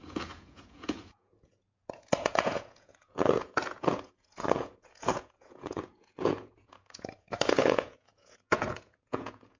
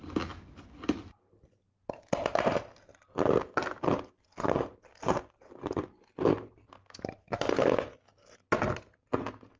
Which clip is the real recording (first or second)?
second